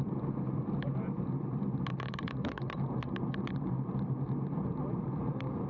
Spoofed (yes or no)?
yes